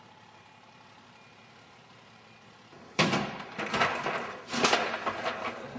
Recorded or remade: remade